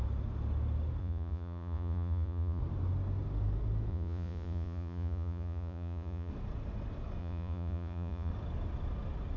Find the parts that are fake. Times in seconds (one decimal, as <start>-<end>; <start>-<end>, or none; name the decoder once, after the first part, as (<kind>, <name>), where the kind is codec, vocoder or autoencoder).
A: 1.0-2.6 (vocoder, Vocos); 3.9-6.3; 7.2-8.3